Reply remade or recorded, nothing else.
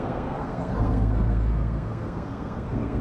remade